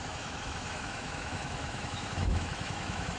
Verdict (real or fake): fake